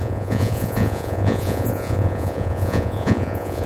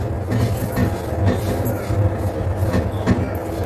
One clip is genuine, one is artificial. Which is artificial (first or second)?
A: first